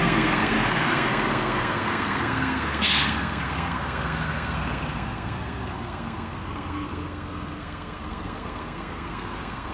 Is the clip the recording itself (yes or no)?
no